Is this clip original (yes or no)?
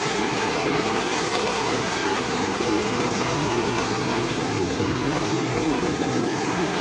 no